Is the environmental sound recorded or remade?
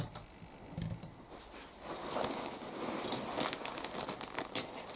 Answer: recorded